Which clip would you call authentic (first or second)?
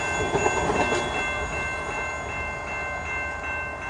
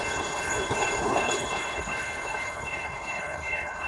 first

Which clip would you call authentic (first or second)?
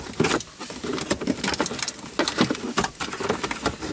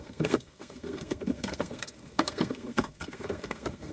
first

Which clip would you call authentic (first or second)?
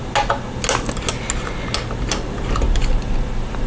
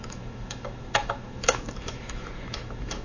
first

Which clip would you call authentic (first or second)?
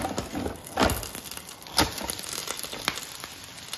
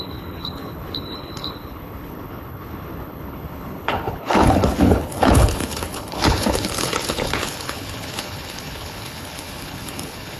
first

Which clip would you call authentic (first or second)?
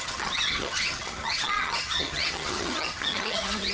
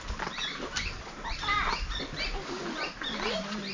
second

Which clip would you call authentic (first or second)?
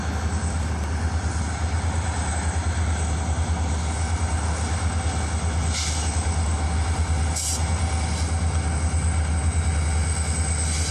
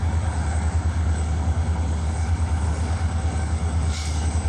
first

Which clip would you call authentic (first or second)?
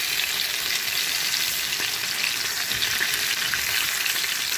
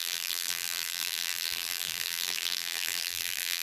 first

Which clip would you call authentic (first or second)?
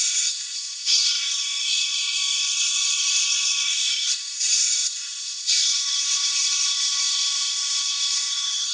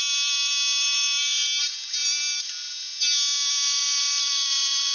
second